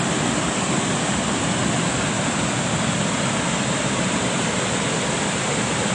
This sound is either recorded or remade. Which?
recorded